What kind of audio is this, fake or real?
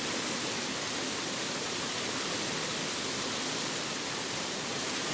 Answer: real